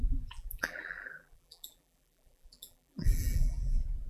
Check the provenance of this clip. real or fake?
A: fake